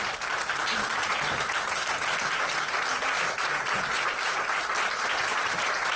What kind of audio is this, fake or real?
real